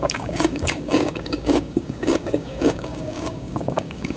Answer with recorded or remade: remade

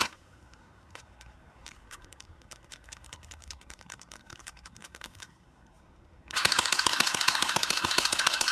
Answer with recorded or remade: remade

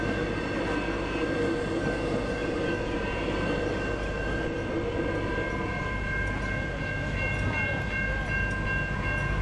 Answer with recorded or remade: recorded